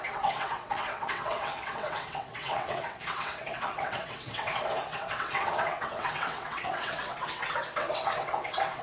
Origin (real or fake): fake